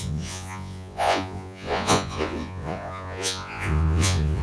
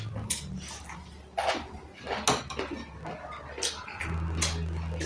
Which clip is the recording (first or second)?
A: second